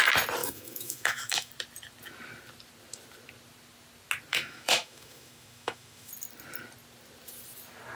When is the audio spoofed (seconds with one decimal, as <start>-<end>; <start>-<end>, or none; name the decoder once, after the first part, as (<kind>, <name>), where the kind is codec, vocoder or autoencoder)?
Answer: 0.4-1.5 (autoencoder, DAC-VAE); 4.3-6.1